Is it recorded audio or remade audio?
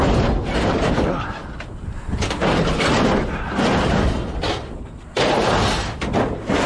recorded